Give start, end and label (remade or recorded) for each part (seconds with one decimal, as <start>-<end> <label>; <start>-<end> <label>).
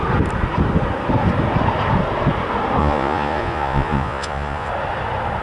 0.0-2.8 recorded; 2.8-4.7 remade; 4.7-5.4 recorded